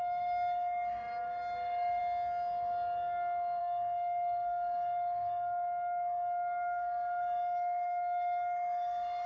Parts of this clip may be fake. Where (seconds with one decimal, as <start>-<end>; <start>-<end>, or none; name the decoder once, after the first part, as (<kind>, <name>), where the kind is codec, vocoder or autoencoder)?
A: 0.0-2.0 (codec, DAC); 3.6-9.3

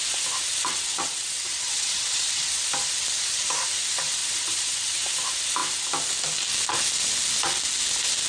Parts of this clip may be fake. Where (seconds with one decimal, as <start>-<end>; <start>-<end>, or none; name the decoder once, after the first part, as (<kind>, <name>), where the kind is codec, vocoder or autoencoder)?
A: 0.5-2.7 (vocoder, WaveNeXt); 4.2-5.0

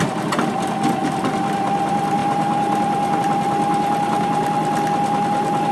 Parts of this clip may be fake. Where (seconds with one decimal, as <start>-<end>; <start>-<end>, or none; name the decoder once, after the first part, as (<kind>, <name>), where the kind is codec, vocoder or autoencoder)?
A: none

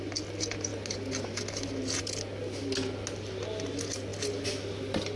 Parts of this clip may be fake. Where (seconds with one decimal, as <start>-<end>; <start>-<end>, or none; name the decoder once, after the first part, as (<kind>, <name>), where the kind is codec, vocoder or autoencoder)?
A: 4.1-5.2 (vocoder, BigVGAN v2)

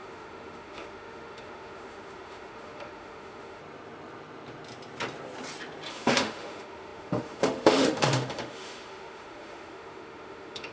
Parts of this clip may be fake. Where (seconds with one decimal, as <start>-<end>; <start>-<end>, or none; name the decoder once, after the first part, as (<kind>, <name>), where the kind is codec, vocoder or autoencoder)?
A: 0.0-3.6 (autoencoder, DAC-VAE); 5.9-10.7

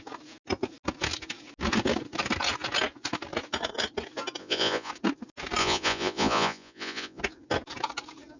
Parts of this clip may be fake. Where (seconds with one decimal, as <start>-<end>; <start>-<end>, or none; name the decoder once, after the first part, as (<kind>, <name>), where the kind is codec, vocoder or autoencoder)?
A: 4.4-4.9 (vocoder, Vocos); 5.6-7.2

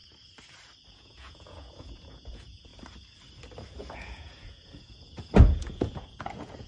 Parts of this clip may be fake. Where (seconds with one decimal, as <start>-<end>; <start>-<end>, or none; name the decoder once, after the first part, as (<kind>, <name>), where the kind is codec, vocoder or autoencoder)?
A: 0.9-2.7 (vocoder, Vocos); 3.7-6.7

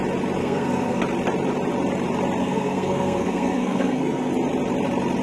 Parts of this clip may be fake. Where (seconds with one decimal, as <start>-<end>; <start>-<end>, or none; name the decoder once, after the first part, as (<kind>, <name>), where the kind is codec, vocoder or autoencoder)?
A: 0.4-1.0 (codec, SNAC); 2.4-4.3